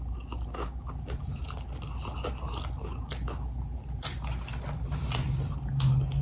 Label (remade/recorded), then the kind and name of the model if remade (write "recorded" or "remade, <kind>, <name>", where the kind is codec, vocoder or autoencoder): recorded